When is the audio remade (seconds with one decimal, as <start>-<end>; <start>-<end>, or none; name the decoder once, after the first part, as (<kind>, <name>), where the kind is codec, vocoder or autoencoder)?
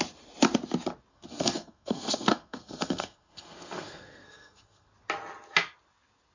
1.1-4.9 (codec, SNAC)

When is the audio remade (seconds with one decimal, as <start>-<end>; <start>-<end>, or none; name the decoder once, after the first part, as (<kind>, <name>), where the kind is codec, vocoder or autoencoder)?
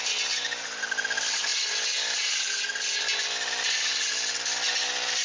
none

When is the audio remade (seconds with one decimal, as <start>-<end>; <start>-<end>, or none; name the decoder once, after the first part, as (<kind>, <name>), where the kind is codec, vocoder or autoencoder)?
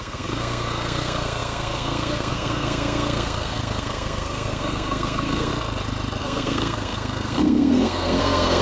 0.0-5.5 (codec, SNAC); 6.2-8.6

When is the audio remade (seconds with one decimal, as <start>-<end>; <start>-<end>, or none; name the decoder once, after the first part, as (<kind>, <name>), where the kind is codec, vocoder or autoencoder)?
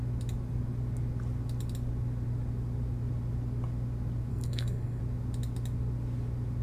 4.3-5.0 (codec, SNAC)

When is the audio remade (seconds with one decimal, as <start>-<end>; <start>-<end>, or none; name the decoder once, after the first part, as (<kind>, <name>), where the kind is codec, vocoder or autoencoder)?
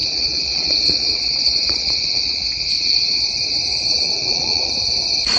0.0-3.2 (vocoder, Vocos); 3.9-4.7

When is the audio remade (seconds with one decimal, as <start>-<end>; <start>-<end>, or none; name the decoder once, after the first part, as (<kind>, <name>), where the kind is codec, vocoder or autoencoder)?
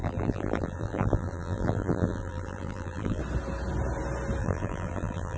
0.0-3.2 (vocoder, BigVGAN v2); 4.4-5.4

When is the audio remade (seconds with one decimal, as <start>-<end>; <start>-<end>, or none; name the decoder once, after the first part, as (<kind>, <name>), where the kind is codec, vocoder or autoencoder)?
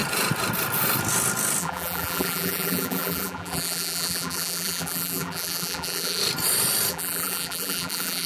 1.6-6.2 (vocoder, BigVGAN v2); 6.9-8.3